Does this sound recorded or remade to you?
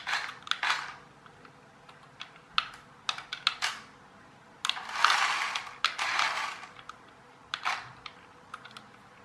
recorded